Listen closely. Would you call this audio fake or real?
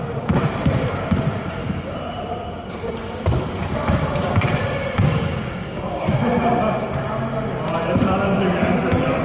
real